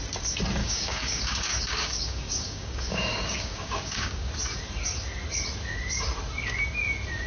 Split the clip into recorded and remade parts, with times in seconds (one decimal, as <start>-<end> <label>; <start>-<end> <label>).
0.0-0.6 recorded; 0.6-4.3 remade; 4.3-7.3 recorded